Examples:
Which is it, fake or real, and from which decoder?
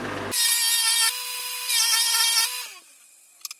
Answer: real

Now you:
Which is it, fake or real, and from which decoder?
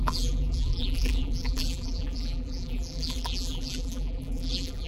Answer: fake, vocoder, BigVGAN v2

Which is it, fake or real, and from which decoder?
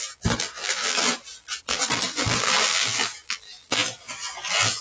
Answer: fake, vocoder, BigVGAN v2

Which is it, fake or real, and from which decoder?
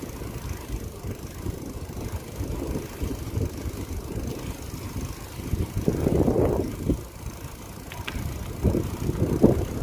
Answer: real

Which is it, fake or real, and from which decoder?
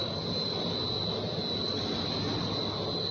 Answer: real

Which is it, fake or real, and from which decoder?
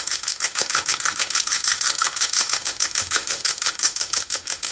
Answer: fake, autoencoder, DAC-VAE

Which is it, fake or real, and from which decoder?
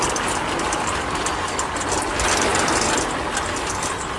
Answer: real